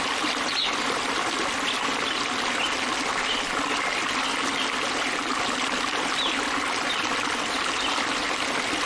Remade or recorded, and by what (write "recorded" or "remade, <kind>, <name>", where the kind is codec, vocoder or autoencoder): recorded